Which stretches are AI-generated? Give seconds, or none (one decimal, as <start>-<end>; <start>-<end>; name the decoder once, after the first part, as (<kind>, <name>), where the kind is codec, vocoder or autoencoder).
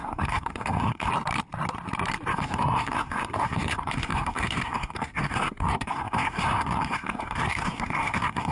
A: 0.0-1.1 (codec, SNAC); 2.3-8.5